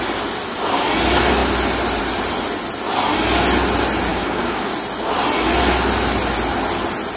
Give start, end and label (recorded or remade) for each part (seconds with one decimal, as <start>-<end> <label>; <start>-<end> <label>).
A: 0.0-4.1 recorded; 4.1-4.7 remade; 4.7-7.2 recorded